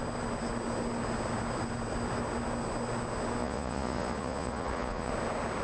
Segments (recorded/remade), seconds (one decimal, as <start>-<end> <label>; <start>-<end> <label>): 0.0-3.4 recorded; 3.4-5.1 remade; 5.1-5.6 recorded